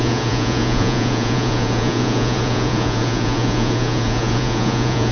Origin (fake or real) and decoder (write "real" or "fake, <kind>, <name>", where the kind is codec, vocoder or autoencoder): fake, vocoder, Vocos